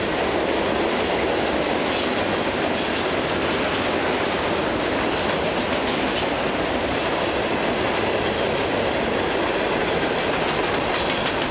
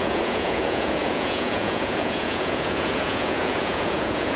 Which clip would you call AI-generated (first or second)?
second